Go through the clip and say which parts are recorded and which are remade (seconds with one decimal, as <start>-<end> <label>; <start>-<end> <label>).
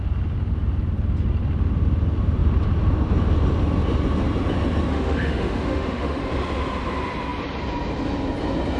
0.0-4.9 recorded; 4.9-6.2 remade; 6.2-8.8 recorded